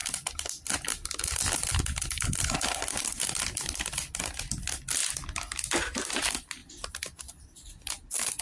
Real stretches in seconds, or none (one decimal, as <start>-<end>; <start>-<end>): 0.0-8.4